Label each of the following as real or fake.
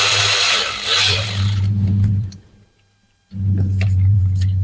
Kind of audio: fake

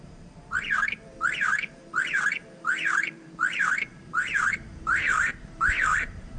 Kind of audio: fake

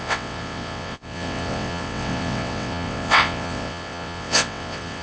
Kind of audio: fake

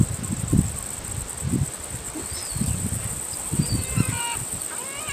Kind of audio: real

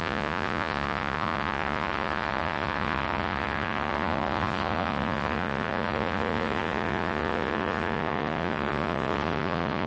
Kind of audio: fake